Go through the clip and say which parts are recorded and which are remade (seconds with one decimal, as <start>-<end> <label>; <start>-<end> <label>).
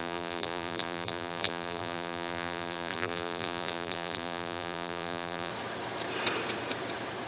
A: 0.0-5.5 remade; 5.5-7.3 recorded